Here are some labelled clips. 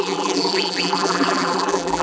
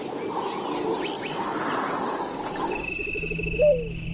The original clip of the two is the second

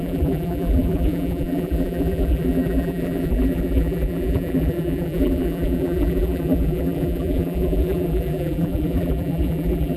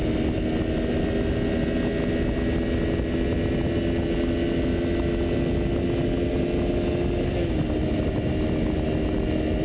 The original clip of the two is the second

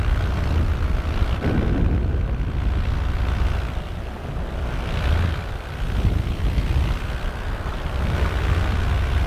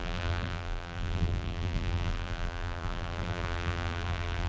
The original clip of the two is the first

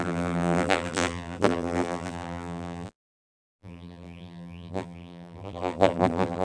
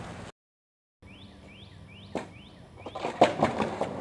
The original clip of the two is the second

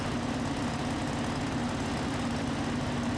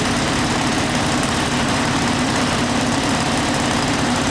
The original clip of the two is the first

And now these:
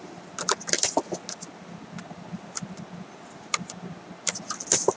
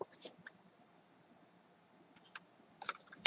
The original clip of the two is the first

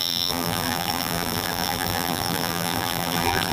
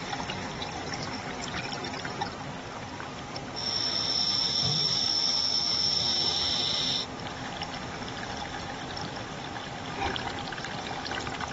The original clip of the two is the second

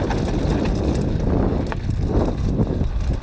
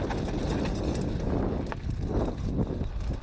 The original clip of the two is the second